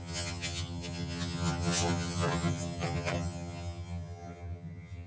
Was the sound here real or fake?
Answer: fake